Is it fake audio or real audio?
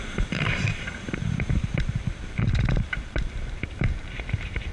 fake